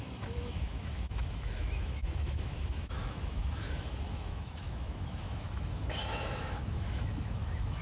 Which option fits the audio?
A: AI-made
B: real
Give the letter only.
A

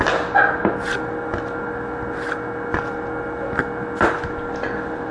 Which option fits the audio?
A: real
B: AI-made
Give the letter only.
A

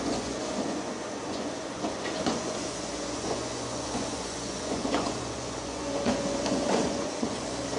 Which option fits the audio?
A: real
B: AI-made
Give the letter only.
B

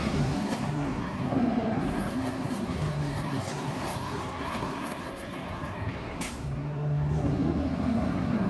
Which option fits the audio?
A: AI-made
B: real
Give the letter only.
A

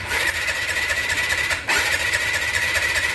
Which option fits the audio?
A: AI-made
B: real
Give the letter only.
A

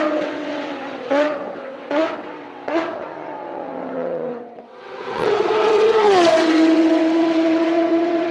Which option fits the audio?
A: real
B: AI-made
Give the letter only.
B